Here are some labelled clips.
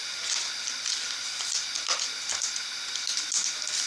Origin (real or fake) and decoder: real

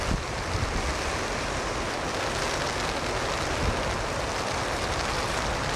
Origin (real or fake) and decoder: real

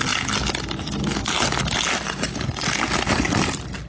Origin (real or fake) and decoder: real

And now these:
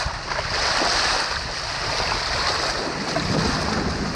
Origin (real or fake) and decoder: real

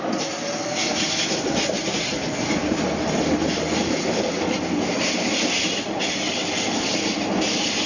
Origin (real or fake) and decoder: real